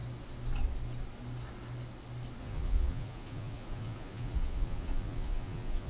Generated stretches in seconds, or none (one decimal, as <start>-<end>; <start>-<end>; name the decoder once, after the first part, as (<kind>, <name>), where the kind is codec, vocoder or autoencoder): 2.4-5.9 (vocoder, Vocos)